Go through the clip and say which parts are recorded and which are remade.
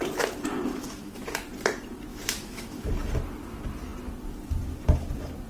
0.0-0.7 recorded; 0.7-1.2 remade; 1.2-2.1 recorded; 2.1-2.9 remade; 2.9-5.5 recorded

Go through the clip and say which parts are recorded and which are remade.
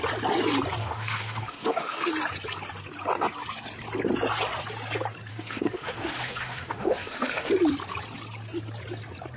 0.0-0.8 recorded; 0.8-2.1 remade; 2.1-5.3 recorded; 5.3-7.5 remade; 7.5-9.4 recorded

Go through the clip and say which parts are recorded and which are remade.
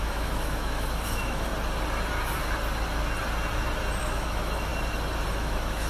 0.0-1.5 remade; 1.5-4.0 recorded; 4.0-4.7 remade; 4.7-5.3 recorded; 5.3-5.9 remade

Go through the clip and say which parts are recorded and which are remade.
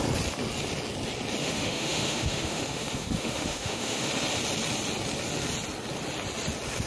0.0-1.4 recorded; 1.4-4.1 remade; 4.1-6.9 recorded